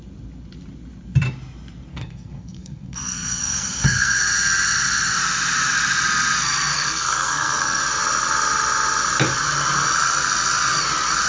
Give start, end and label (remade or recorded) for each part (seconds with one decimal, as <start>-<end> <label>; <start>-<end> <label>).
0.0-1.9 recorded; 1.9-4.2 remade; 4.2-6.7 recorded; 6.7-7.8 remade; 7.8-11.3 recorded

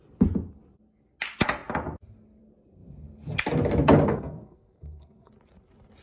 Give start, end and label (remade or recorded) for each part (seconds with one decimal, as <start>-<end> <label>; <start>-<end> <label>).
0.0-4.1 recorded; 4.1-5.3 remade; 5.3-6.0 recorded

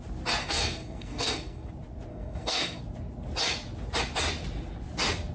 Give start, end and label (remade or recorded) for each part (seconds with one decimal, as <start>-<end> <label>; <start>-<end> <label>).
0.0-0.4 recorded; 0.4-1.7 remade; 1.7-2.1 recorded; 2.1-2.8 remade; 2.8-5.3 recorded

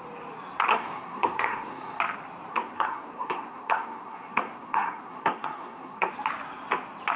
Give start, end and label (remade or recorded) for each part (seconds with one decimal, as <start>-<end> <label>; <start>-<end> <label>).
0.0-0.7 recorded; 0.7-2.0 remade; 2.0-2.5 recorded; 2.5-6.1 remade; 6.1-7.2 recorded

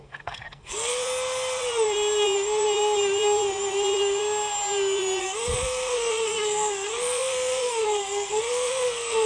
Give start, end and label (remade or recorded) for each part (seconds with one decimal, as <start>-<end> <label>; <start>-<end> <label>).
0.0-1.0 remade; 1.0-5.2 recorded; 5.2-9.3 remade

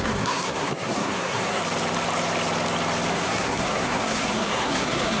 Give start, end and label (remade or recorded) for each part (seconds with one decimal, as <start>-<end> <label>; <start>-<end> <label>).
0.0-1.6 remade; 1.6-3.1 recorded; 3.1-5.2 remade

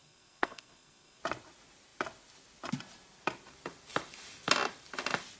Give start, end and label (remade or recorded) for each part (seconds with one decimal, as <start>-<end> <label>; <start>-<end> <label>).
0.0-1.2 remade; 1.2-5.4 recorded

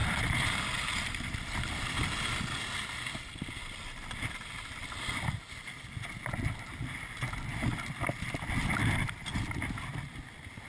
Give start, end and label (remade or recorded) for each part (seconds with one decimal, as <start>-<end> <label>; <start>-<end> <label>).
0.0-10.7 recorded